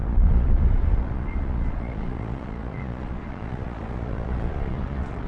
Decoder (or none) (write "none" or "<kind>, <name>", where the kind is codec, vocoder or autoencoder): vocoder, Vocos